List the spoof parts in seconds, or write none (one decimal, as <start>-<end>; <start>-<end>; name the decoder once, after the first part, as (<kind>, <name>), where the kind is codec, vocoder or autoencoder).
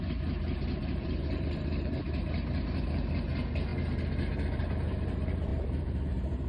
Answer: 0.0-6.5 (vocoder, BigVGAN v2)